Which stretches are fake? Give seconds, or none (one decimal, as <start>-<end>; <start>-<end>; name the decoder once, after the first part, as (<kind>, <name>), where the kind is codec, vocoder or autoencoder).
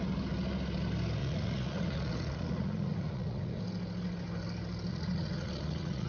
1.2-3.6 (vocoder, Vocos); 4.9-6.1